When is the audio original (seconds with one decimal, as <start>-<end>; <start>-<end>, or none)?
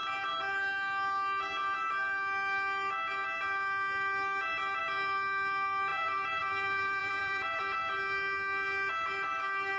0.0-5.9; 7.6-9.8